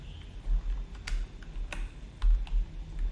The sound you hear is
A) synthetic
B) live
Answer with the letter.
B